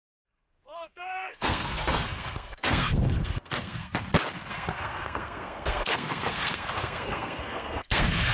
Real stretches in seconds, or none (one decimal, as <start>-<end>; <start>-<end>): 3.9-4.5